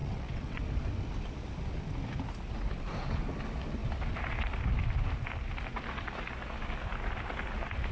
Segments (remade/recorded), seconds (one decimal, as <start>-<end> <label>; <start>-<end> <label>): 0.0-0.6 remade; 0.6-7.9 recorded

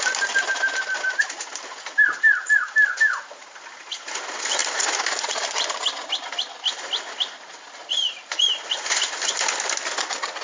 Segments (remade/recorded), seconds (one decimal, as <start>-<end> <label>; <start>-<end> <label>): 0.0-10.4 recorded

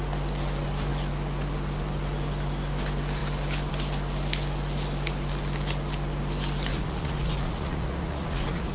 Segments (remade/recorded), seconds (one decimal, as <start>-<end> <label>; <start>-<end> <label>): 0.0-6.7 recorded; 6.7-8.7 remade

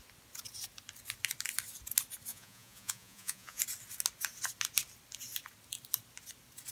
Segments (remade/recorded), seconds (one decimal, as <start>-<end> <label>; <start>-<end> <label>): 0.0-2.3 recorded; 2.3-3.6 remade; 3.6-6.7 recorded

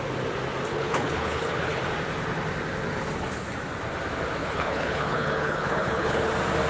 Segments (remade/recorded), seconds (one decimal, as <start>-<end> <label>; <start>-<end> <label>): 0.0-0.7 recorded; 0.7-1.8 remade; 1.8-4.4 recorded; 4.4-6.3 remade; 6.3-6.7 recorded

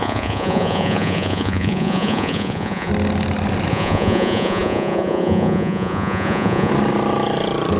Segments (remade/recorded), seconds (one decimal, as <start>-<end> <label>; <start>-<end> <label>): 0.0-2.9 remade; 2.9-3.7 recorded; 3.7-6.7 remade; 6.7-7.8 recorded

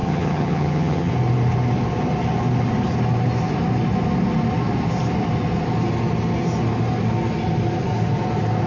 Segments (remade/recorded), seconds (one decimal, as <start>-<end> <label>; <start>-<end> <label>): 0.0-1.1 remade; 1.1-8.7 recorded

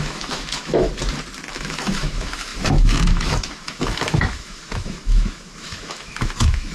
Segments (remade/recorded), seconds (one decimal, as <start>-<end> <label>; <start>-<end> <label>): 0.0-0.9 remade; 0.9-1.5 recorded; 1.5-6.7 remade